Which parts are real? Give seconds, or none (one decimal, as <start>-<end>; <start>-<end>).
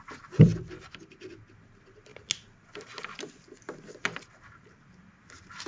0.0-5.7